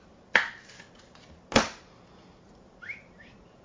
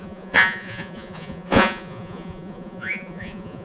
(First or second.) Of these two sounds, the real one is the first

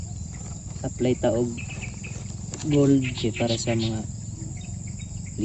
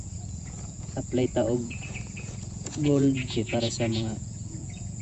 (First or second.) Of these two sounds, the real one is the first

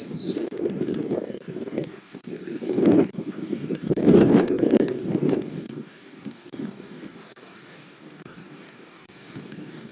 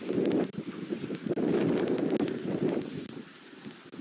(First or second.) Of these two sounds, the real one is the second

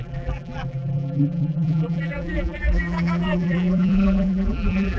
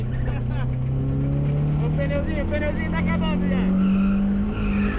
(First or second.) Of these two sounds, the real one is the second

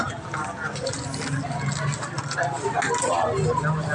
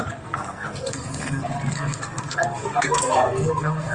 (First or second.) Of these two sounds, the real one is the first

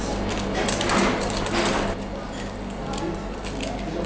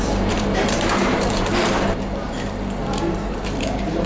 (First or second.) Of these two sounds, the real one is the first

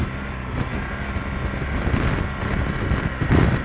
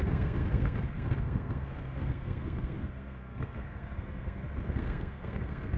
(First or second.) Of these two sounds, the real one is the first